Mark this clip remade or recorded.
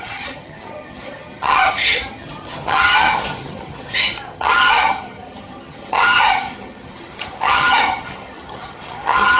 remade